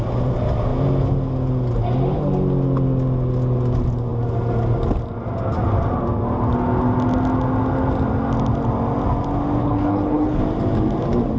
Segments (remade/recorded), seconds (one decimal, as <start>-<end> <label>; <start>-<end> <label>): 0.0-9.6 recorded; 9.6-10.4 remade; 10.4-11.4 recorded